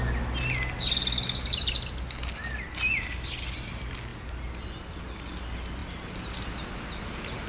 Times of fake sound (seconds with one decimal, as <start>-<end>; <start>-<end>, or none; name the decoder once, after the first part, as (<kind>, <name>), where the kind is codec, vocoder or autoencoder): none